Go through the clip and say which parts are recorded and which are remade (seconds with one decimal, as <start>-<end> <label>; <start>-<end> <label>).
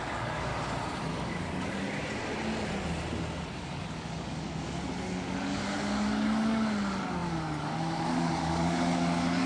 0.0-0.5 remade; 0.5-1.0 recorded; 1.0-2.0 remade; 2.0-3.6 recorded; 3.6-9.5 remade